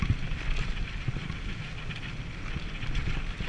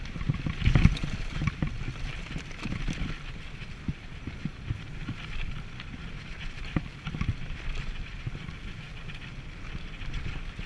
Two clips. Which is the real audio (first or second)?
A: first